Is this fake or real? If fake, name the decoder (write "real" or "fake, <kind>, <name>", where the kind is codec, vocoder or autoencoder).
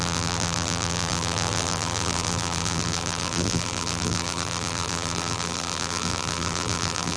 fake, vocoder, BigVGAN v2